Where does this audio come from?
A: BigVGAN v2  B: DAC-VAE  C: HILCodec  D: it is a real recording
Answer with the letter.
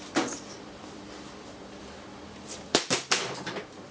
A